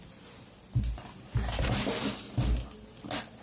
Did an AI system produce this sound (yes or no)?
no